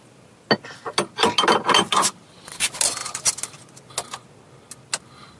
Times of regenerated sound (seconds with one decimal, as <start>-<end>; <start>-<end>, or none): none